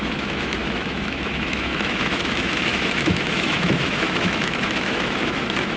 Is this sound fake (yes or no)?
yes